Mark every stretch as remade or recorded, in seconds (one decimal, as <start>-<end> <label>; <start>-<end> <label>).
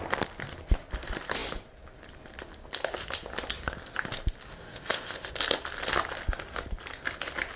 0.0-4.5 recorded; 4.5-5.3 remade; 5.3-7.6 recorded